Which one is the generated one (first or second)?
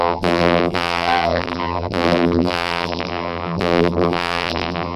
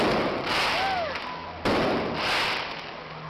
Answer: first